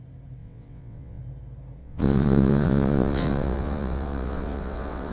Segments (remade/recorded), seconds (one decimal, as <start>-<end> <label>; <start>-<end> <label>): 0.0-0.4 recorded; 0.4-1.2 remade; 1.2-1.8 recorded; 1.8-5.1 remade